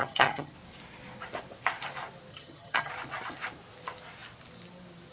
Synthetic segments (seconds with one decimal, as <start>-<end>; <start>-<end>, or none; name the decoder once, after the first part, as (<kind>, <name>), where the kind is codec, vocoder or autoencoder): 0.0-0.5 (vocoder, HiFi-GAN); 2.3-2.9